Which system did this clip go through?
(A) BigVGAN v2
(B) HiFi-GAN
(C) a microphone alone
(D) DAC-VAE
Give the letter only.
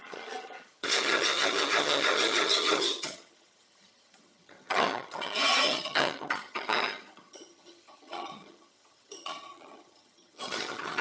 B